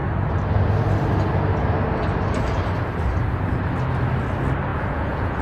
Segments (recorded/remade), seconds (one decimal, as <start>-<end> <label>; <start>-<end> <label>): 0.0-4.7 recorded; 4.7-5.4 remade